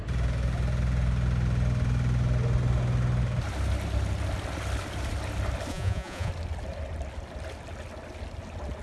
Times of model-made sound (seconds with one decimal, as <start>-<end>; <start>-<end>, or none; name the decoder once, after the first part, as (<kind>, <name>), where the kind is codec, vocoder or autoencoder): 5.7-6.3 (vocoder, Vocos)